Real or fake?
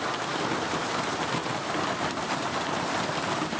real